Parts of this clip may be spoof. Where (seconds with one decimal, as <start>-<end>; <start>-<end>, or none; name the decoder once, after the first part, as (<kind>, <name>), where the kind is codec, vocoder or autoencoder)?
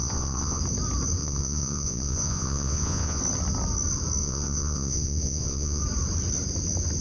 0.0-0.6 (vocoder, Vocos); 1.2-3.2; 4.2-5.8